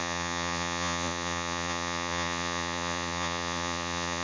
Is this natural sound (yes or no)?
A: no